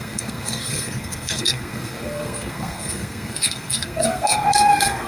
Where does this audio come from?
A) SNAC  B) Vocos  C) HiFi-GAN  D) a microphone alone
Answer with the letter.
A